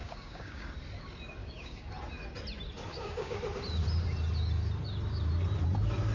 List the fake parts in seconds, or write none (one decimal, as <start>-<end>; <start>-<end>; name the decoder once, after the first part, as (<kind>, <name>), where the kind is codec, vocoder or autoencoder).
0.0-0.7 (codec, DAC); 1.4-1.9; 2.9-3.4